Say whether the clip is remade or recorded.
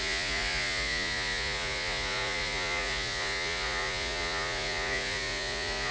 remade